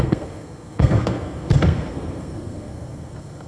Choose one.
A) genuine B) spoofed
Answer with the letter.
B